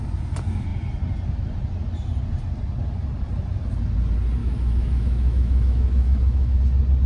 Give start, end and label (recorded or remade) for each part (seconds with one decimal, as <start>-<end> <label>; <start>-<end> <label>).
0.0-4.4 recorded; 4.4-6.6 remade; 6.6-7.1 recorded